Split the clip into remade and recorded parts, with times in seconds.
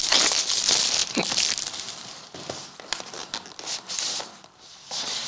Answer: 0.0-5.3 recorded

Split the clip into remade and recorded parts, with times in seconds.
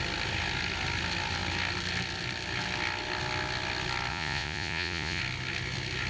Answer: 0.0-4.1 recorded; 4.1-5.2 remade; 5.2-6.1 recorded